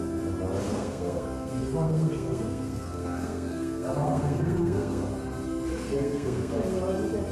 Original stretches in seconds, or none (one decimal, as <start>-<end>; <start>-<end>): 0.0-0.7; 5.1-5.7; 6.8-7.3